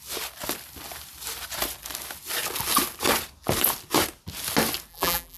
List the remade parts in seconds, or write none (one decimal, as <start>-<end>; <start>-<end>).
4.9-5.4